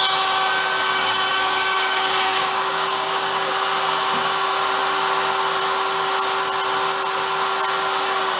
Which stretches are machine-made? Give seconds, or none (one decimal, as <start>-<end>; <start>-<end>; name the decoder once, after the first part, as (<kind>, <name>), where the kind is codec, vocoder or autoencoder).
1.3-3.5 (codec, DAC)